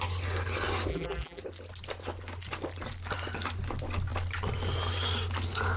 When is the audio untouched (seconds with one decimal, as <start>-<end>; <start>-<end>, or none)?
0.0-0.9; 1.4-5.8